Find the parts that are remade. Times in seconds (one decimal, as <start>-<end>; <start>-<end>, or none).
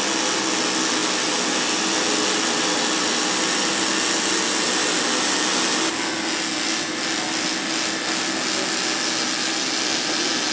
none